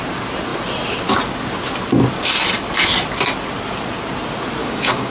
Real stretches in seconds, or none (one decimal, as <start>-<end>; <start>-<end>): 0.0-4.6